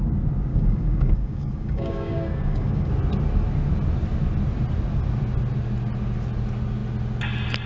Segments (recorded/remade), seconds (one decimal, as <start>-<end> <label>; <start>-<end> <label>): 0.0-0.5 recorded; 0.5-2.9 remade; 2.9-7.7 recorded